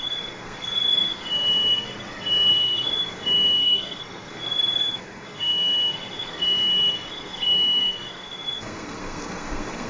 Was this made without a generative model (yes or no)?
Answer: no